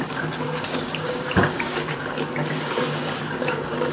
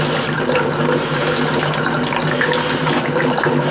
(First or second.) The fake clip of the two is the first